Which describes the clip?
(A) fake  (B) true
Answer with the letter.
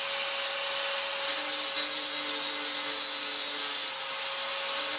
B